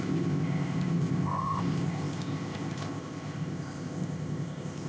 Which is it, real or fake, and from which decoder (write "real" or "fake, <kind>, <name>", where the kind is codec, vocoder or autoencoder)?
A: fake, codec, ZipCodec